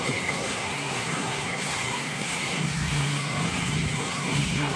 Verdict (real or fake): fake